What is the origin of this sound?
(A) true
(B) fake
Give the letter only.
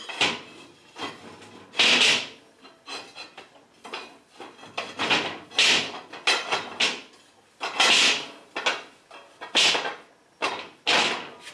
A